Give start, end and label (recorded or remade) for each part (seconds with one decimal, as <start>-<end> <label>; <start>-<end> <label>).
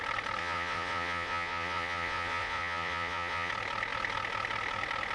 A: 0.0-0.4 recorded; 0.4-3.5 remade; 3.5-5.1 recorded